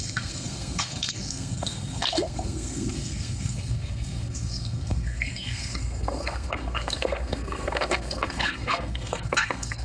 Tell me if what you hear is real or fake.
fake